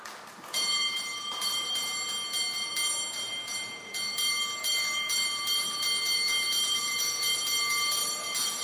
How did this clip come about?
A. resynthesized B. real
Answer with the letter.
A